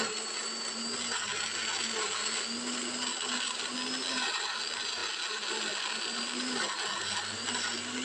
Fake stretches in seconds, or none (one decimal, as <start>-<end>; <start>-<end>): none

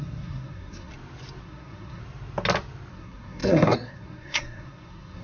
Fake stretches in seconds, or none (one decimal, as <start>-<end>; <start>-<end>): 0.0-0.9; 1.4-2.0; 2.9-5.2

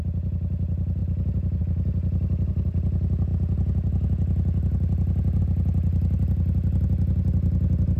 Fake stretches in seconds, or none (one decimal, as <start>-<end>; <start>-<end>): none

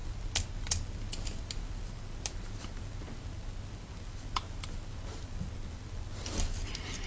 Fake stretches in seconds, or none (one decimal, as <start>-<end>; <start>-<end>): none

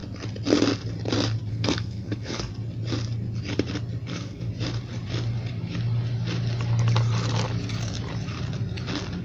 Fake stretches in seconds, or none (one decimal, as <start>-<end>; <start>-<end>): 1.5-2.5; 4.1-4.5

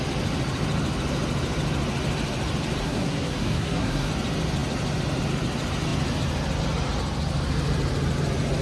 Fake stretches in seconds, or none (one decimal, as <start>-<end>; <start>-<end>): 2.8-4.1

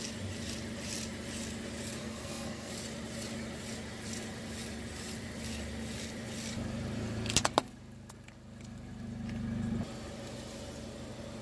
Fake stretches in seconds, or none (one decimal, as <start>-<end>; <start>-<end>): 2.0-2.7

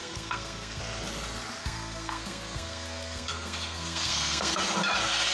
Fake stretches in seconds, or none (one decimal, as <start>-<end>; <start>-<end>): 0.0-0.8; 1.6-4.6